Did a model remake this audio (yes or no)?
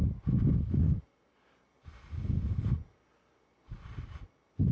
no